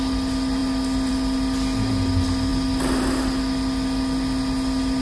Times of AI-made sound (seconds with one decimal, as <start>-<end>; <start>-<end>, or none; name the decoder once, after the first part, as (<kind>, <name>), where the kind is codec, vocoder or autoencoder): none